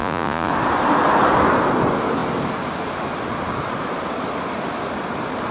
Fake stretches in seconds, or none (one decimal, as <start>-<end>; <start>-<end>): 0.0-0.5